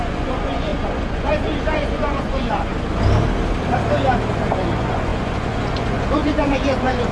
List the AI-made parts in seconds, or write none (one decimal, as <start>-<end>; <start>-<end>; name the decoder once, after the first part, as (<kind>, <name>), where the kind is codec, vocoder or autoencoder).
0.0-2.7 (vocoder, Vocos); 4.3-7.1